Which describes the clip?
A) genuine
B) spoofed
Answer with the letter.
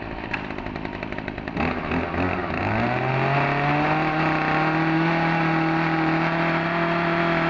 A